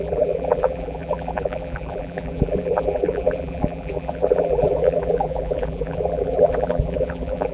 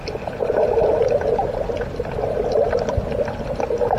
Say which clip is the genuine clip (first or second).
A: second